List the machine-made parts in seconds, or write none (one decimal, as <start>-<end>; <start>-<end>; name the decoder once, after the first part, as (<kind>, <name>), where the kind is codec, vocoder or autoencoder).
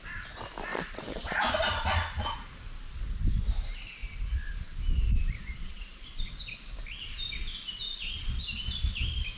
0.7-1.5 (vocoder, Vocos); 5.4-6.1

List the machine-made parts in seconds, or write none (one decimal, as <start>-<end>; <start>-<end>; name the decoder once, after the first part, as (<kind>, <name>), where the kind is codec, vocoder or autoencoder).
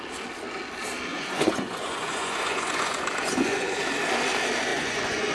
1.1-3.8 (vocoder, Vocos); 4.7-5.3